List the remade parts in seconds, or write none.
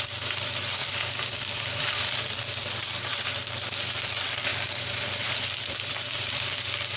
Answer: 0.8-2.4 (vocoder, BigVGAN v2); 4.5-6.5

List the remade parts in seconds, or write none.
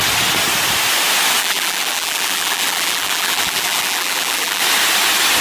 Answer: 1.4-4.6 (vocoder, BigVGAN v2)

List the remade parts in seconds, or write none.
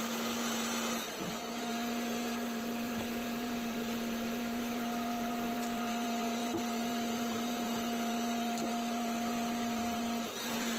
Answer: 0.0-10.8 (vocoder, BigVGAN v2)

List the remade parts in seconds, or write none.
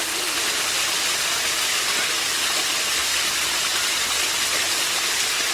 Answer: none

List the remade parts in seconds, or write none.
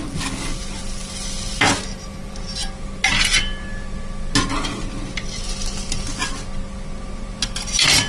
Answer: none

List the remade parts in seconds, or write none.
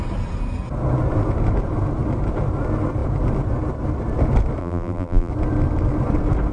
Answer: 4.6-5.3 (vocoder, BigVGAN v2)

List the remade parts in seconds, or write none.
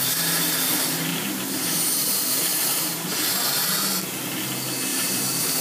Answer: 1.1-3.3 (vocoder, BigVGAN v2); 4.9-5.6